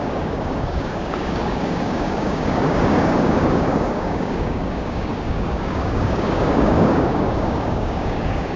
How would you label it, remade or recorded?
remade